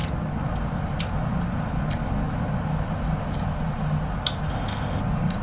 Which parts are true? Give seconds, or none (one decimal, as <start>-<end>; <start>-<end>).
0.0-4.5; 5.0-5.4